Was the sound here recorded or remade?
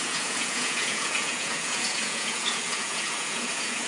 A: remade